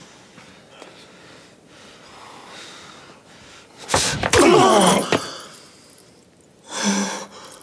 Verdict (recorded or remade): recorded